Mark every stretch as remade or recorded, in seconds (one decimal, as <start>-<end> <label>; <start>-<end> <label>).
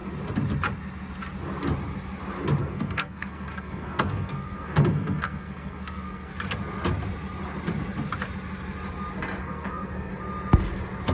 0.0-2.6 recorded; 2.6-6.3 remade; 6.3-9.4 recorded; 9.4-10.1 remade; 10.1-11.1 recorded